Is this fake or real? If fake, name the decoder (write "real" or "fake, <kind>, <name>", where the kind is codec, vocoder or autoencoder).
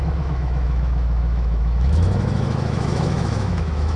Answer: fake, autoencoder, DAC-VAE